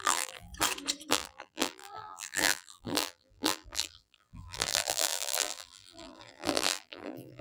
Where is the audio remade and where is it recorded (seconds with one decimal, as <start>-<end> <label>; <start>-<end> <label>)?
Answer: 0.0-0.5 remade; 0.5-1.1 recorded; 1.1-7.4 remade